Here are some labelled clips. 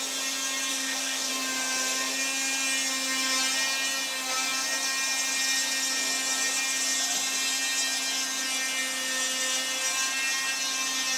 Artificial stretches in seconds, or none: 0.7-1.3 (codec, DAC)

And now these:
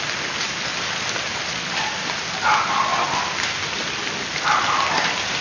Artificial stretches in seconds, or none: none

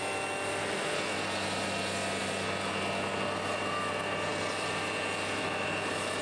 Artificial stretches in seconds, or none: none

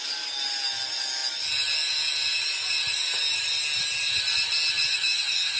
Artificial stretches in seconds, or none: 4.9-5.6 (autoencoder, DAC-VAE)